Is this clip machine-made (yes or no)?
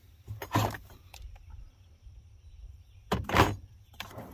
yes